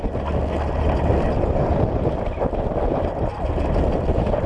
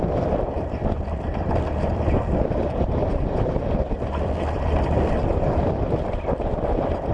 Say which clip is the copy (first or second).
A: second